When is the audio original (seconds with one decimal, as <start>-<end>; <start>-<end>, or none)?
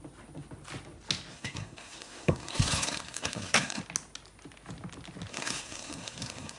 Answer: 0.0-1.3; 3.8-5.3